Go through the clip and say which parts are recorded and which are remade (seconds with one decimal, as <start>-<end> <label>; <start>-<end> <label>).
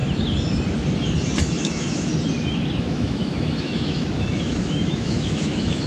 0.0-1.4 recorded; 1.4-2.1 remade; 2.1-2.8 recorded; 2.8-5.9 remade